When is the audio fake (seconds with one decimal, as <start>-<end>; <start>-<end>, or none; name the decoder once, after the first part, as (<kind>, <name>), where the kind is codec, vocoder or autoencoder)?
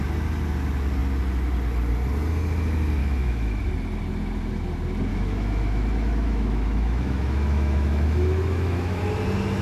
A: 3.0-3.6 (autoencoder, DAC-VAE); 5.1-9.0